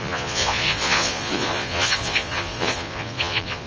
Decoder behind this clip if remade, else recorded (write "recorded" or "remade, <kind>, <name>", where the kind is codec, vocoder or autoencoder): remade, vocoder, Vocos